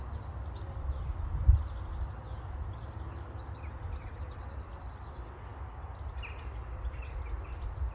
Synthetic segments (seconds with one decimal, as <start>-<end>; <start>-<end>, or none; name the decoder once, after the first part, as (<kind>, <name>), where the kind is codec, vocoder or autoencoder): none